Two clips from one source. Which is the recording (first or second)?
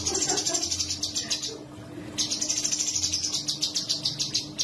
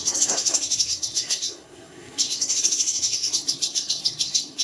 first